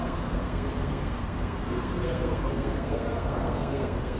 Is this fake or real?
fake